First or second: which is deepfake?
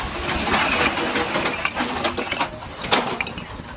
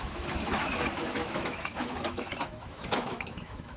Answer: second